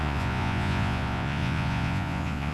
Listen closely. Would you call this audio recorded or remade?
remade